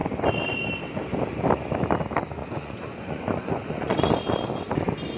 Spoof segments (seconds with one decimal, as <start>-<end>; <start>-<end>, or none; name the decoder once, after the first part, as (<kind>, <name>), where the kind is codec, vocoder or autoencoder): 2.4-4.1 (vocoder, Vocos)